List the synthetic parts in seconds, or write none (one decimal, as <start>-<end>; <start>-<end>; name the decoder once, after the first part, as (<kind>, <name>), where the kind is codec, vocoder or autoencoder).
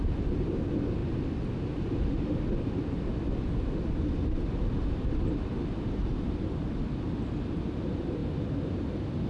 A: none